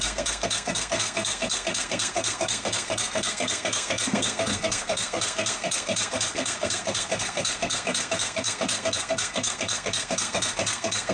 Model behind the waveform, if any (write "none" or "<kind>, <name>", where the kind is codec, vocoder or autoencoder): codec, SNAC